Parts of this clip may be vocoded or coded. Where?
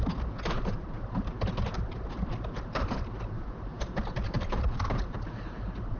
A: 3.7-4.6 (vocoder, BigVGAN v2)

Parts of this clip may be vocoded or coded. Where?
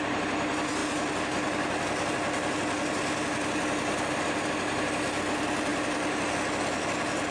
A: 0.8-5.2 (vocoder, BigVGAN v2); 5.7-6.3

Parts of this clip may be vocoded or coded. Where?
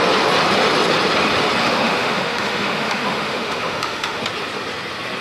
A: 1.6-4.2 (autoencoder, DAC-VAE)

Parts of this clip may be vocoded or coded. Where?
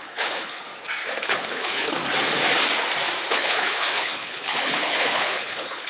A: 0.0-0.7 (codec, HILCodec); 1.2-2.0; 3.3-5.9